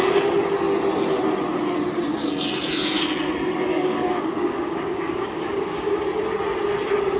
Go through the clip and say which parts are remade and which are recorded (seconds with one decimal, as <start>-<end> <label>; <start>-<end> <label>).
0.0-3.7 recorded; 3.7-6.0 remade; 6.0-7.2 recorded